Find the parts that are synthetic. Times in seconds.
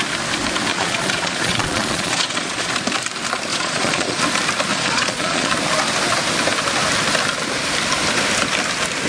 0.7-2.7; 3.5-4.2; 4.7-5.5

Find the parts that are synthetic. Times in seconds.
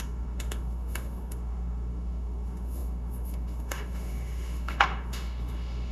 0.0-5.9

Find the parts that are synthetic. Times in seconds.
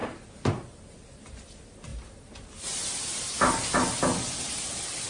none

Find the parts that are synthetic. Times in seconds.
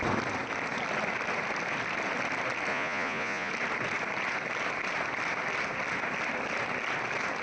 2.7-3.5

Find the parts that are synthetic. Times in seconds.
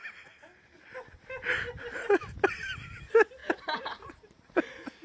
3.4-5.0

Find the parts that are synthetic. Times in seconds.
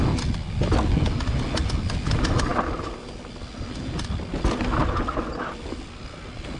none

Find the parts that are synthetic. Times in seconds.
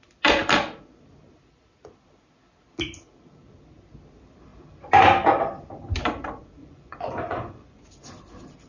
6.6-7.8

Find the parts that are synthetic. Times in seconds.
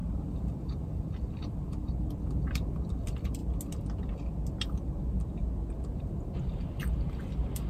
0.0-3.4; 6.0-7.7